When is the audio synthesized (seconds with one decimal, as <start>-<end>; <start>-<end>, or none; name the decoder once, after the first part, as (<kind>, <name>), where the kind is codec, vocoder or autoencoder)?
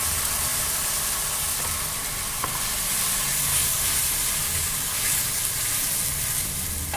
3.5-4.0 (codec, DAC); 4.4-5.4